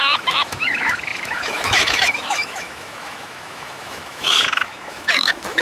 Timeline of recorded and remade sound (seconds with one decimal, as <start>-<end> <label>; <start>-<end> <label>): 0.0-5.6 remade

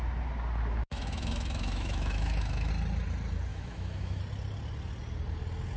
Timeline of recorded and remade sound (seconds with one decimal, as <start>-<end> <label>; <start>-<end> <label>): 0.0-0.8 recorded; 0.8-2.7 remade; 2.7-3.5 recorded; 3.5-4.2 remade; 4.2-5.8 recorded

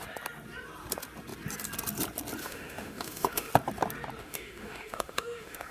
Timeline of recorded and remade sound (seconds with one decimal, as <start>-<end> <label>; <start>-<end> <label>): 0.0-2.4 recorded; 2.4-3.5 remade; 3.5-4.2 recorded; 4.2-5.7 remade